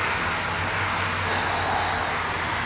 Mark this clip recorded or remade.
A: recorded